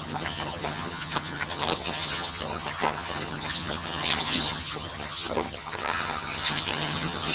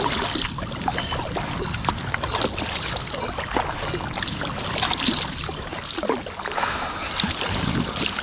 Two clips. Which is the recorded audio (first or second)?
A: second